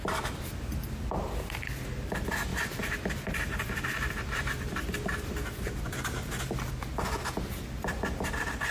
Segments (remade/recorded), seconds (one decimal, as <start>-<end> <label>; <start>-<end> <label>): 0.0-2.5 recorded; 2.5-6.4 remade; 6.4-8.7 recorded